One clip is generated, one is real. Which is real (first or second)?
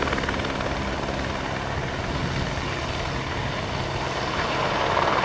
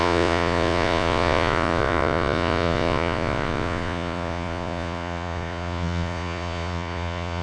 first